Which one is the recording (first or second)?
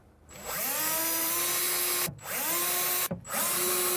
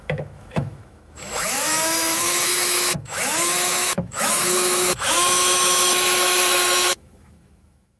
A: first